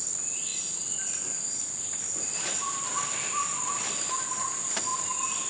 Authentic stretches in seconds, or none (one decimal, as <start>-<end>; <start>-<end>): 0.0-5.5